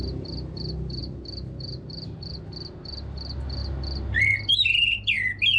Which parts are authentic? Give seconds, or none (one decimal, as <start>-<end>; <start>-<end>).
0.0-5.6